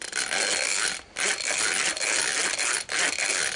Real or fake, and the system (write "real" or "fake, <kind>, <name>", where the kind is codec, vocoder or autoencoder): real